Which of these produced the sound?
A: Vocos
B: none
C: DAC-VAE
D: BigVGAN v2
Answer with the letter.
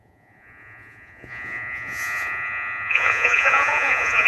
A